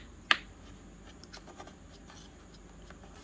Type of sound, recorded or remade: recorded